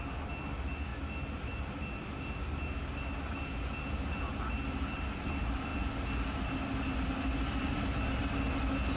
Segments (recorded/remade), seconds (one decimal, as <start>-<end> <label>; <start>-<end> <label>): 0.0-9.0 recorded